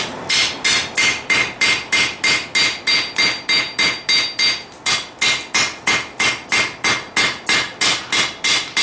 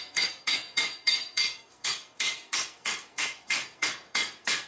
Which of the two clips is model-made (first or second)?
second